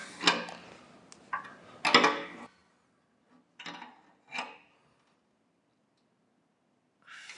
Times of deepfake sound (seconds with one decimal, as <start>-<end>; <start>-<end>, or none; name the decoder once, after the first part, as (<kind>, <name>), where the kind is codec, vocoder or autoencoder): none